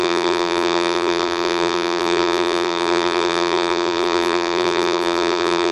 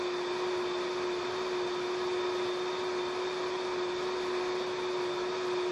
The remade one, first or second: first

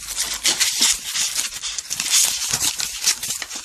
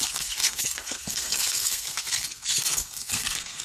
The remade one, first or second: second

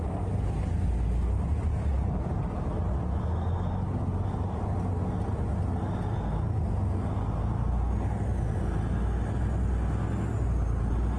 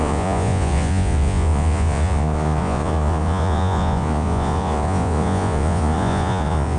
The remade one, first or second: second